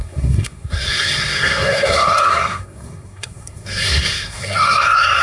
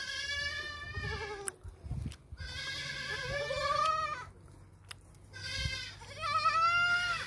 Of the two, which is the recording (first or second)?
second